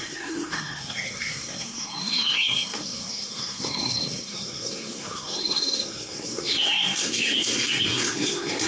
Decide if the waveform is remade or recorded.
remade